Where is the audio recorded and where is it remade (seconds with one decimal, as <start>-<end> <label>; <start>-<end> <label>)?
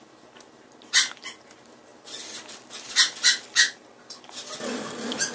0.0-5.3 recorded